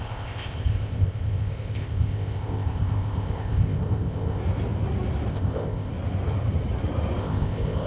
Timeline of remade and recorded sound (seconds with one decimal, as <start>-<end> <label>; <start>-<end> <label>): 0.0-4.4 remade; 4.4-5.3 recorded; 5.3-5.9 remade; 5.9-7.2 recorded; 7.2-7.9 remade